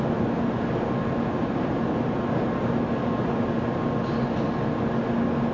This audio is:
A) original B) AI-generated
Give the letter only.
A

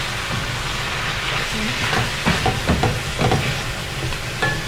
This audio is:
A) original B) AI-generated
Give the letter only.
A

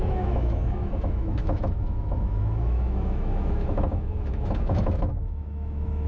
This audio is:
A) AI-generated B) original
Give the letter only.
A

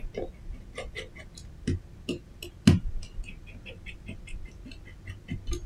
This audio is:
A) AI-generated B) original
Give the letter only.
B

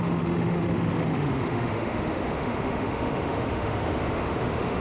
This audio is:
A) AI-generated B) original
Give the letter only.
A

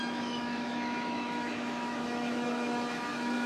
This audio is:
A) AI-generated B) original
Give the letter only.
A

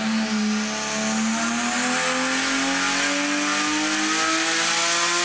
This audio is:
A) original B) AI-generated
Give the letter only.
A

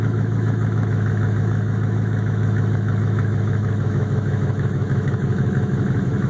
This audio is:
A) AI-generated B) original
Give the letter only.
A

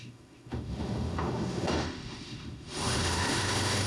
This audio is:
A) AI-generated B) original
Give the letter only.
A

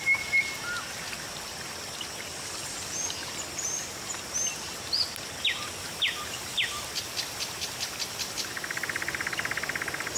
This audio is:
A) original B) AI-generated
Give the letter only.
A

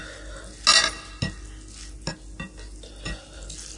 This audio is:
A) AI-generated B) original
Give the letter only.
B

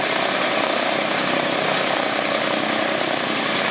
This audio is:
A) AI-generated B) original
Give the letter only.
B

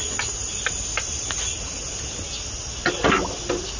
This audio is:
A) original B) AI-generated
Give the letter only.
A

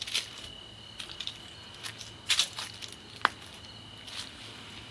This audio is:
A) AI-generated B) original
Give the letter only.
B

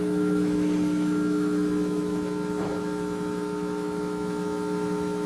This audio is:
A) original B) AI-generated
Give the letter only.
B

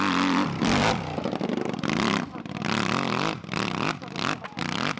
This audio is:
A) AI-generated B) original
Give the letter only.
B